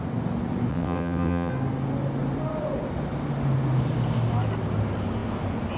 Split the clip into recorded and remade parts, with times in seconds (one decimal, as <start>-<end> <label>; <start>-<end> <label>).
0.0-0.7 recorded; 0.7-1.5 remade; 1.5-5.8 recorded